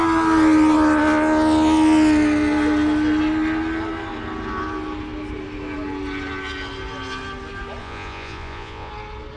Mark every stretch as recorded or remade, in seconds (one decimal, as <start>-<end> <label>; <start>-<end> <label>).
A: 0.0-7.8 recorded; 7.8-8.9 remade; 8.9-9.4 recorded